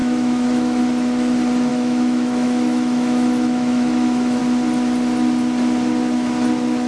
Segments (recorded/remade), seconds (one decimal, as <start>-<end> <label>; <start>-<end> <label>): 0.0-0.8 remade; 0.8-1.7 recorded; 1.7-4.4 remade; 4.4-6.9 recorded